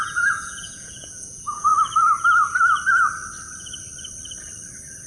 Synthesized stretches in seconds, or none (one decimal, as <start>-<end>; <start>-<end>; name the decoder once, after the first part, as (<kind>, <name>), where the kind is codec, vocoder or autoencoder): 0.0-1.7 (vocoder, Vocos)